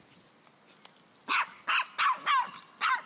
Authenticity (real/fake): real